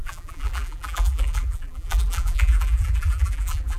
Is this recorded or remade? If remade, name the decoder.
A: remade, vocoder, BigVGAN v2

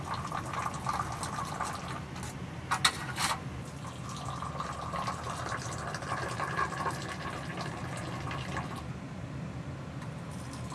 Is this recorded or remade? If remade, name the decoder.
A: recorded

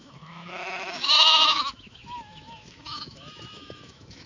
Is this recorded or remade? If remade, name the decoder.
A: remade, autoencoder, DAC-VAE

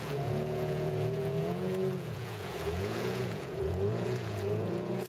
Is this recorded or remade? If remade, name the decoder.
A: remade, vocoder, Vocos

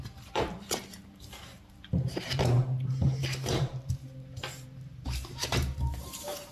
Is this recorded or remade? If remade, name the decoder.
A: remade, vocoder, BigVGAN v2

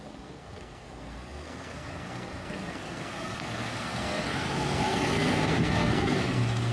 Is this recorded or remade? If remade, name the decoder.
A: remade, codec, SNAC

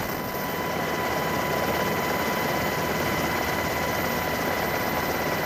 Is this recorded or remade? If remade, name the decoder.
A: recorded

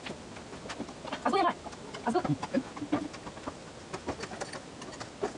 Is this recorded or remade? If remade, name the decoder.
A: recorded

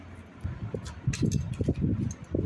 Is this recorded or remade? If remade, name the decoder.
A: recorded